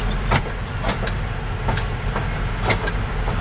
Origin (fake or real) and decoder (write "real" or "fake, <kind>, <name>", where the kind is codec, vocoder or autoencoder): real